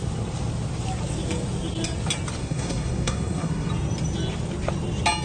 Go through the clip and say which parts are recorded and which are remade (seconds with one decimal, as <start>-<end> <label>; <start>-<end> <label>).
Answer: 0.0-2.4 recorded; 2.4-3.7 remade; 3.7-5.2 recorded